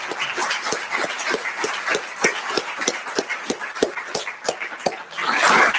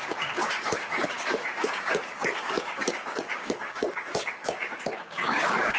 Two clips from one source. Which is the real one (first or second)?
first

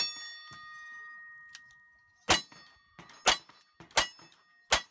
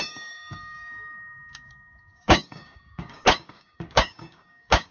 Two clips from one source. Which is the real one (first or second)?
first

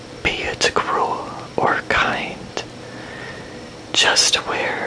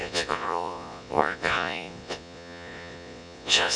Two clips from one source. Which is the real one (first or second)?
first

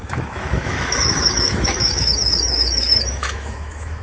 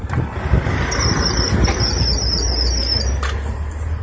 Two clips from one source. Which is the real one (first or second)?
second